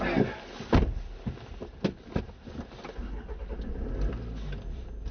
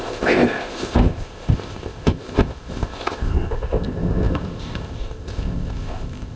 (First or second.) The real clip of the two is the first